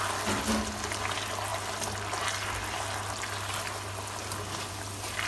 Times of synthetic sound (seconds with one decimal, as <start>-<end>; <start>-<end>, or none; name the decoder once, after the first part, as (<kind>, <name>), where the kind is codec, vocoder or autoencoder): none